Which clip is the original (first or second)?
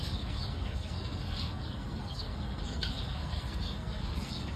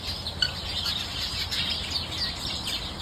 second